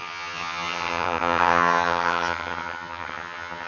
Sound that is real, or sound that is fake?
fake